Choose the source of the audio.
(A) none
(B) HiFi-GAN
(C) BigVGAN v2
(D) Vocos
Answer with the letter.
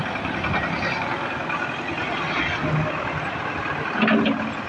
A